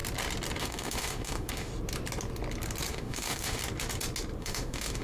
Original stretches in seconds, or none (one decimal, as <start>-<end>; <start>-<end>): 0.0-0.6; 1.7-2.9; 3.6-4.4